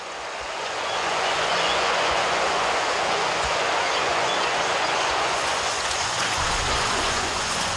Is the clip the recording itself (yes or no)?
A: no